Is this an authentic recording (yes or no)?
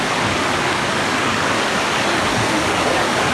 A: no